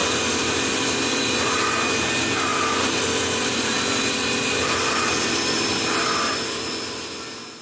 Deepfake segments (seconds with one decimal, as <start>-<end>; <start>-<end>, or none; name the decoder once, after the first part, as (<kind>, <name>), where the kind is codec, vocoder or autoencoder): none